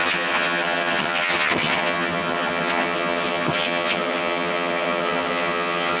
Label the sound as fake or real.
fake